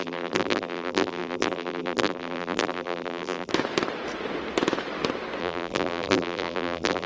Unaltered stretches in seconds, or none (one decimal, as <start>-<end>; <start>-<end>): 3.5-5.4